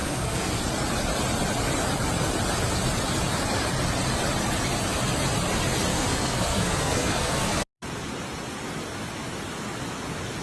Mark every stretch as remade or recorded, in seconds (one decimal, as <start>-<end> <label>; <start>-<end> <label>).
0.0-0.6 remade; 0.6-5.9 recorded; 5.9-7.6 remade; 7.6-10.4 recorded